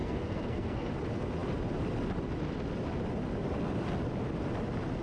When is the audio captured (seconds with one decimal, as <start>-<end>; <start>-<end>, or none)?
0.9-5.0